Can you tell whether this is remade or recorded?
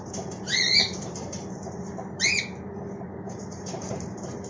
remade